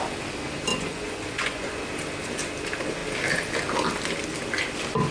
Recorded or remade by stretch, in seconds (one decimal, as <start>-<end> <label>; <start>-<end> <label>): 0.0-0.7 recorded; 0.7-1.8 remade; 1.8-5.1 recorded